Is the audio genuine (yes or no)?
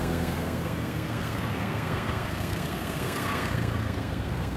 no